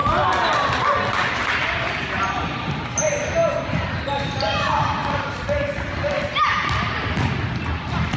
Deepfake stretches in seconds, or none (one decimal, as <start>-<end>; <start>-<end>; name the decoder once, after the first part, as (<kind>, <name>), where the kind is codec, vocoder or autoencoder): none